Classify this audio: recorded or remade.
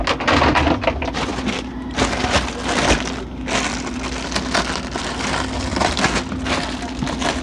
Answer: recorded